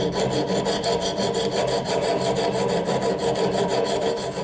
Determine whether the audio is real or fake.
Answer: real